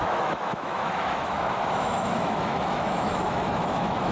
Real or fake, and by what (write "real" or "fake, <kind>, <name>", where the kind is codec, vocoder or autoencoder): fake, autoencoder, DAC-VAE